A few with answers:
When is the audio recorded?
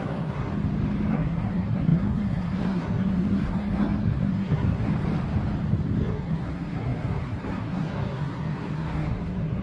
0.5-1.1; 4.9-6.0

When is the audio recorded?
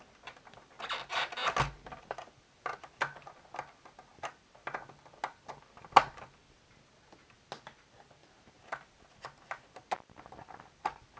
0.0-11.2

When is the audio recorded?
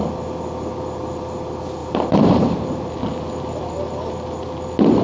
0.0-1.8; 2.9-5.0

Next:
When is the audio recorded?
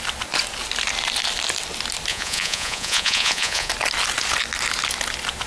0.0-2.1; 3.7-5.5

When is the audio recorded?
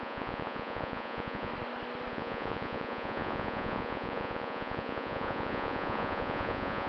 1.5-2.1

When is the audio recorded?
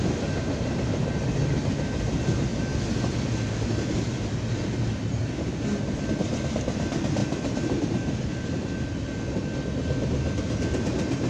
0.0-7.2; 8.3-11.3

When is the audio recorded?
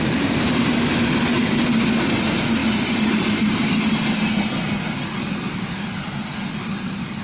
0.0-7.2